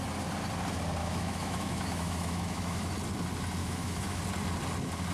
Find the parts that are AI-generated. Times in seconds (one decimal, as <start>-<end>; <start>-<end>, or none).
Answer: 1.0-2.9; 3.6-4.2